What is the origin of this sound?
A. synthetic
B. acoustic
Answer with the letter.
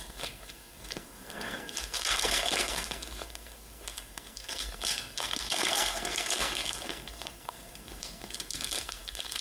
A